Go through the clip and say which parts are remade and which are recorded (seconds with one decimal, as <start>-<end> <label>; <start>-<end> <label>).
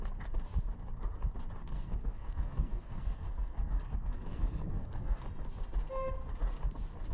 0.0-1.6 recorded; 1.6-5.2 remade; 5.2-7.1 recorded